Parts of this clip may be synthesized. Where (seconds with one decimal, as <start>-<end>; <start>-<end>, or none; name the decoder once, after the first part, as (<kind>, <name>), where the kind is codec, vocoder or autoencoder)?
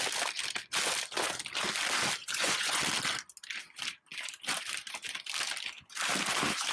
2.2-2.8 (vocoder, Vocos)